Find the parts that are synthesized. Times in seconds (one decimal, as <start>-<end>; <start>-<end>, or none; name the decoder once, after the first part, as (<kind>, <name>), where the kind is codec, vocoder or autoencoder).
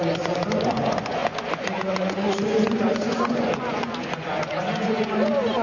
0.0-5.6 (vocoder, Vocos)